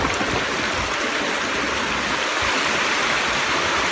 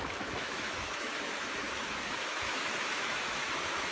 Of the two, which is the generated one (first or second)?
second